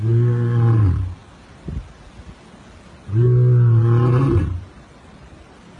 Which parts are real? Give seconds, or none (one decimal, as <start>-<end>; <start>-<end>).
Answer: 0.0-5.8